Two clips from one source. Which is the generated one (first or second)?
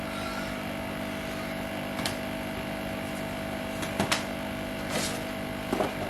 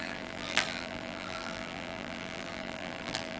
second